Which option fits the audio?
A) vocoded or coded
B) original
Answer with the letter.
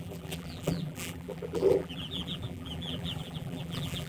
A